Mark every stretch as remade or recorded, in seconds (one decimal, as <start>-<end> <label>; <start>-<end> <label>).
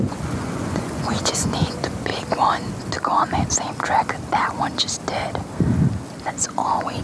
0.0-2.1 remade; 2.1-6.3 recorded; 6.3-7.0 remade